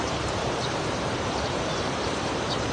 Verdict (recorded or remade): remade